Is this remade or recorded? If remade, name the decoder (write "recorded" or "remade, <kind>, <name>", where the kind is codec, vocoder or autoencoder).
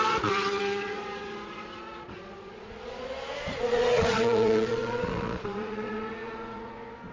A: remade, vocoder, Vocos